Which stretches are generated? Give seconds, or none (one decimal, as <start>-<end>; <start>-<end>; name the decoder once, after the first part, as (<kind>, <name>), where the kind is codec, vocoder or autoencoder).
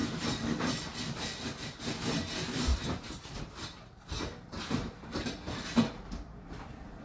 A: 2.7-7.0 (vocoder, BigVGAN v2)